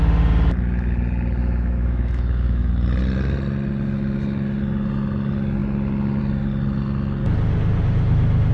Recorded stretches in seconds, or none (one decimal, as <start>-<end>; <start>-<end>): 0.0-1.4; 2.7-8.5